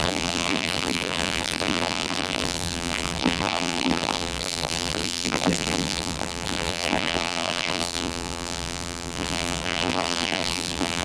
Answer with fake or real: fake